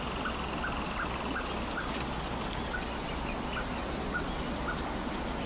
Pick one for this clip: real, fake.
real